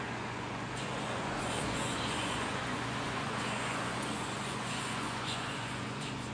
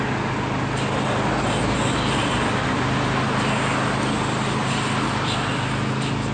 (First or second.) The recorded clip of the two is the second